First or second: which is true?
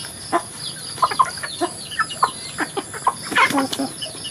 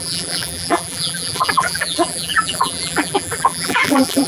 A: first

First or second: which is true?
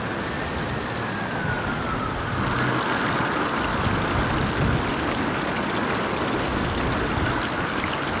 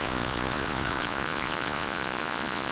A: first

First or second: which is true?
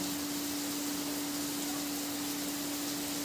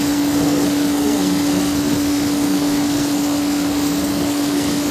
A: first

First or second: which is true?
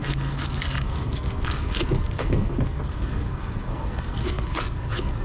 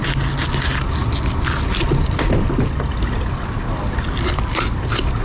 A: second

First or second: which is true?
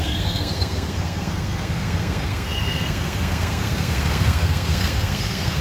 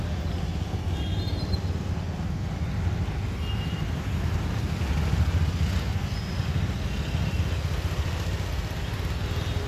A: second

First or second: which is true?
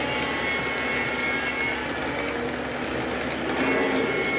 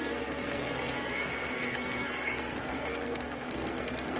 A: first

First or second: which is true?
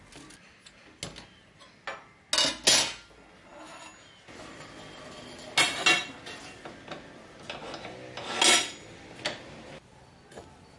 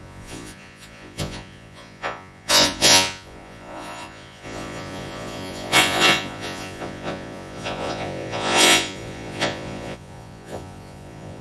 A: first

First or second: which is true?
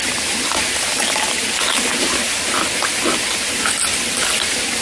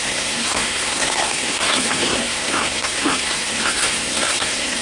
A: first